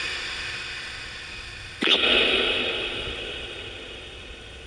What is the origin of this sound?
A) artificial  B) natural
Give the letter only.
A